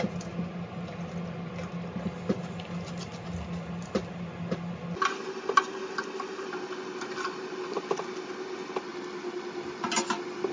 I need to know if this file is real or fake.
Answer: real